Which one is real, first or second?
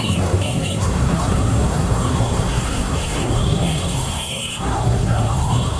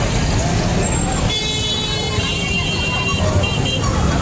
second